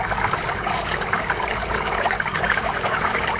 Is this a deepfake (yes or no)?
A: yes